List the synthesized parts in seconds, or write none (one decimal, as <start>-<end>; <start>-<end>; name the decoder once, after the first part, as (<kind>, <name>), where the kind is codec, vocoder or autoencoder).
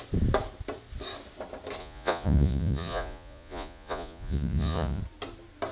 1.8-5.0 (vocoder, Vocos)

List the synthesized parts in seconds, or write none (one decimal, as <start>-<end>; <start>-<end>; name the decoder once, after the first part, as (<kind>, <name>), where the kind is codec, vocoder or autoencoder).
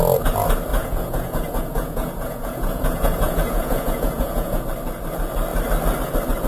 0.7-4.6 (vocoder, Vocos)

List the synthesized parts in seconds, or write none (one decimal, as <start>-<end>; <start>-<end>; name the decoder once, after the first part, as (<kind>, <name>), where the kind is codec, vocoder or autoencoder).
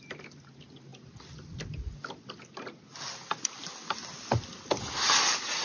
none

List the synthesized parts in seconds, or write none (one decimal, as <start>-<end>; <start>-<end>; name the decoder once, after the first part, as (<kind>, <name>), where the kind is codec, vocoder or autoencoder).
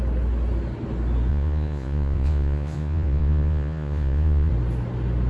1.3-4.5 (vocoder, Vocos)